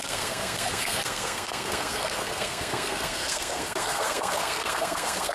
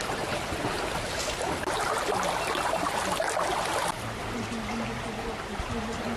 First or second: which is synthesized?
first